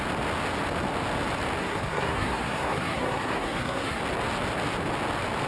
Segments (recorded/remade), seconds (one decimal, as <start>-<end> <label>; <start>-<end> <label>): 0.0-1.6 recorded; 1.6-4.0 remade; 4.0-5.5 recorded